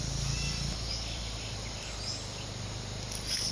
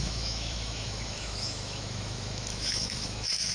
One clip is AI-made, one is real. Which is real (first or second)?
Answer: first